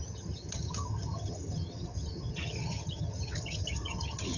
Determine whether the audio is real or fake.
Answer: fake